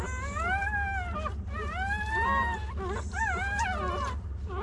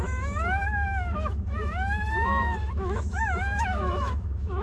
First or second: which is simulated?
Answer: second